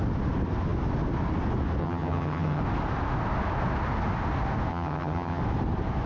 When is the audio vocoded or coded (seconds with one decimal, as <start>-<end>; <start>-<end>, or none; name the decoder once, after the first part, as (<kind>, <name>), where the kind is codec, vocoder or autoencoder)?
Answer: 1.8-2.6 (vocoder, HiFi-GAN); 4.7-5.4

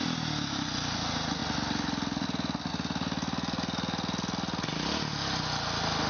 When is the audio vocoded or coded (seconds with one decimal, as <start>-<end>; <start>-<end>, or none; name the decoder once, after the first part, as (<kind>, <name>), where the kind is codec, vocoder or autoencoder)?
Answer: none